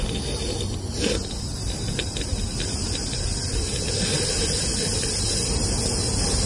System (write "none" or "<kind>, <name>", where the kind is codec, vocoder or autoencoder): none